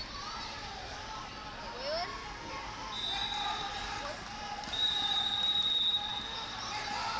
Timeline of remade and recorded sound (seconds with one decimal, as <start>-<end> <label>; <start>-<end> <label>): 0.0-1.3 remade; 1.3-4.4 recorded; 4.4-6.1 remade; 6.1-6.6 recorded; 6.6-7.2 remade